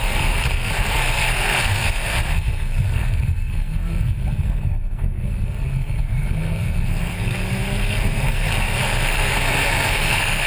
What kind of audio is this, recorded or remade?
remade